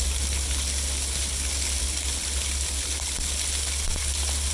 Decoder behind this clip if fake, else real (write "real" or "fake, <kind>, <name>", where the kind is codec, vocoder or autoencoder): real